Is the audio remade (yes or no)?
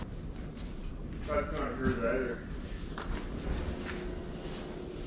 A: no